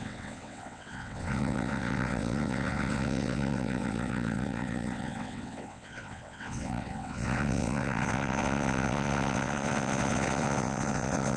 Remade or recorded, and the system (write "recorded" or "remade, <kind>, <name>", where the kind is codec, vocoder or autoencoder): remade, vocoder, WaveNeXt